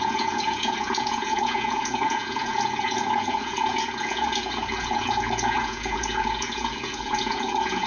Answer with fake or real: fake